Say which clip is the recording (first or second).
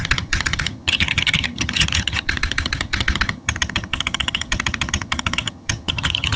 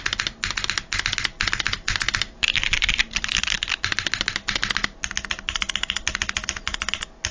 second